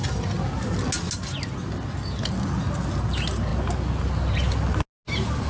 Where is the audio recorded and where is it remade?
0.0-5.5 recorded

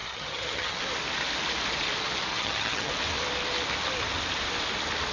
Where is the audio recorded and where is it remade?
0.0-0.8 remade; 0.8-2.3 recorded; 2.3-2.9 remade; 2.9-5.1 recorded

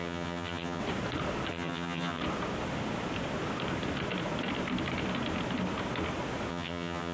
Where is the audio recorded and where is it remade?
0.0-0.8 remade; 0.8-1.5 recorded; 1.5-2.2 remade; 2.2-6.5 recorded; 6.5-7.1 remade